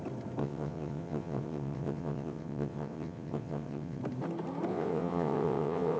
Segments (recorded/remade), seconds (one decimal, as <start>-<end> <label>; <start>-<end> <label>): 0.0-0.4 recorded; 0.4-4.0 remade; 4.0-4.7 recorded; 4.7-6.0 remade